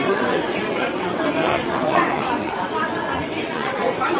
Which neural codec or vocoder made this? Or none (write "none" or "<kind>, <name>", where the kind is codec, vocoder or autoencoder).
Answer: vocoder, WaveNeXt